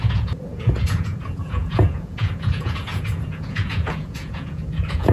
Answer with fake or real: fake